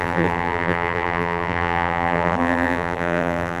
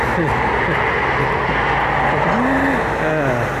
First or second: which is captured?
second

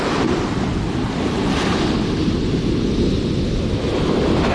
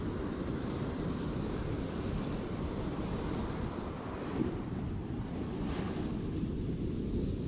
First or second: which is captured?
first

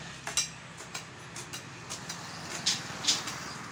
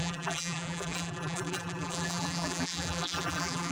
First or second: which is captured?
first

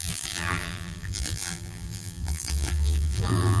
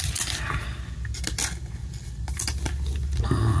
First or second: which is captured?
second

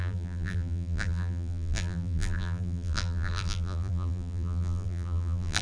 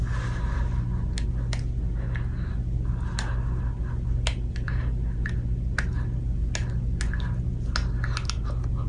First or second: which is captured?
second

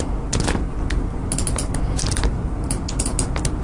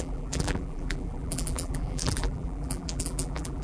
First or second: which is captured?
first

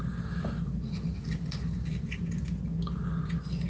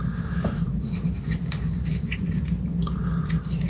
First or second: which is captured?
first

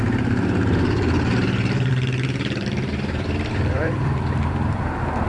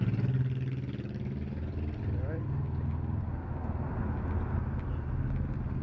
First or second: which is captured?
second